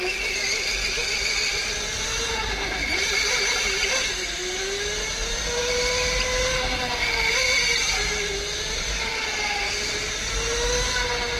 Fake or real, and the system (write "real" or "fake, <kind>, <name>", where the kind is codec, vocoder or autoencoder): real